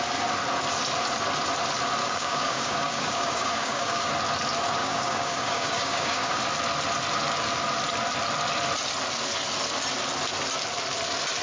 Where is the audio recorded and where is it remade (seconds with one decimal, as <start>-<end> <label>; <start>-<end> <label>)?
0.0-2.0 recorded; 2.0-4.1 remade; 4.1-4.8 recorded; 4.8-6.4 remade; 6.4-11.4 recorded